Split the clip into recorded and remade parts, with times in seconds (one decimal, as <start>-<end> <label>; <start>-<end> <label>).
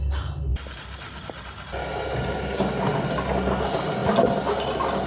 0.0-5.1 recorded